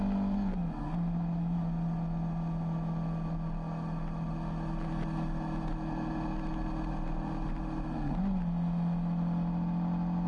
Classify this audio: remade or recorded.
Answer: recorded